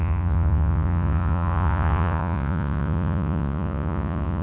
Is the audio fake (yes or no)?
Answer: yes